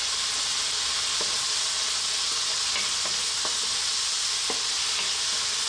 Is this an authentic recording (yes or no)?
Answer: yes